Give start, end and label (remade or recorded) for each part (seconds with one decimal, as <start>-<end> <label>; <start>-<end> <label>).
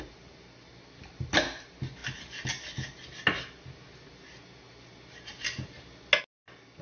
0.0-6.8 recorded